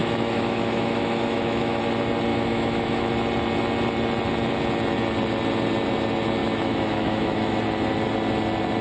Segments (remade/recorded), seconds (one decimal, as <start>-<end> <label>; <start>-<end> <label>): 0.0-1.8 remade; 1.8-2.3 recorded; 2.3-3.1 remade; 3.1-6.4 recorded; 6.4-7.6 remade; 7.6-8.8 recorded